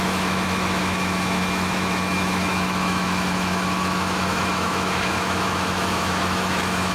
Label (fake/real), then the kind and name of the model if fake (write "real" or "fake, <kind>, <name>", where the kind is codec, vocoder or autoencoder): fake, autoencoder, DAC-VAE